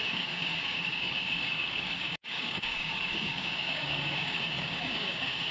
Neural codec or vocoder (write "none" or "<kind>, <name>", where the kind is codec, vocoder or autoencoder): codec, DAC